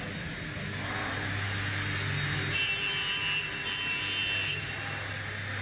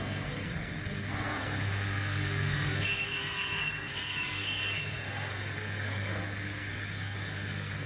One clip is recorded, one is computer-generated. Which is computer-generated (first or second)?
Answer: second